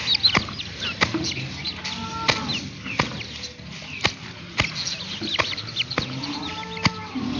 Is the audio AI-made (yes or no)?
no